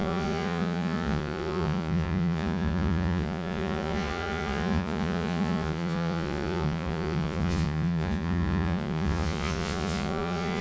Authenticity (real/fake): fake